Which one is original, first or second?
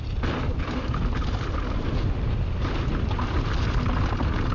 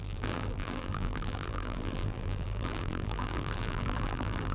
first